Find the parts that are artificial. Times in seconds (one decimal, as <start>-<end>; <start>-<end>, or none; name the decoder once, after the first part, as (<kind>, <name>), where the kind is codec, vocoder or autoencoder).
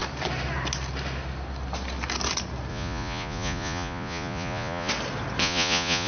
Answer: 2.7-4.9 (vocoder, Vocos); 5.4-6.1